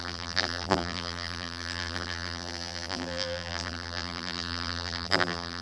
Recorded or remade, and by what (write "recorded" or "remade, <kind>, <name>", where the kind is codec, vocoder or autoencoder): remade, vocoder, BigVGAN v2